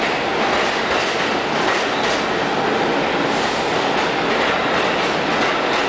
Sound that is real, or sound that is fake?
real